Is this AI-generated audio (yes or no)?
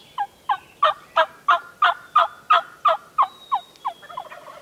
no